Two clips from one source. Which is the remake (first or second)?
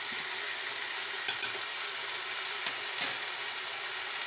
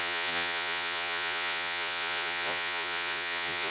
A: second